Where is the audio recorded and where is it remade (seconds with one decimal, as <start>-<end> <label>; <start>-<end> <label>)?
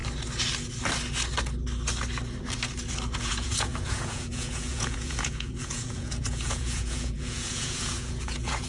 0.0-3.2 recorded; 3.2-8.7 remade